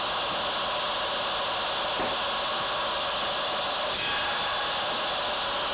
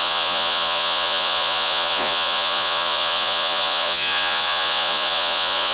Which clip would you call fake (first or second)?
second